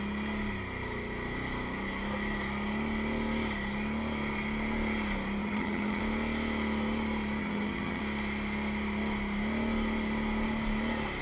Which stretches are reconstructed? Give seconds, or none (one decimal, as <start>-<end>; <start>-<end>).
5.4-6.0; 7.4-8.0